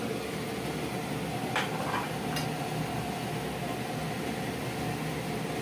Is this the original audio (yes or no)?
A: yes